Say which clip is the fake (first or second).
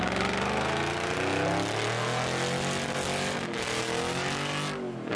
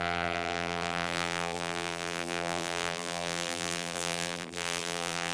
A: second